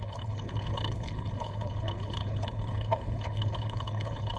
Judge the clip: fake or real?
fake